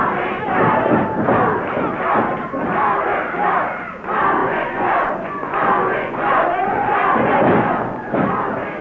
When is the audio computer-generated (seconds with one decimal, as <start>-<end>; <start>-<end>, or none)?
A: 4.4-8.2